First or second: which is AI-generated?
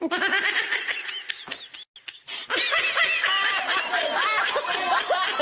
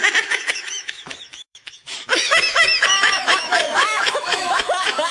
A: second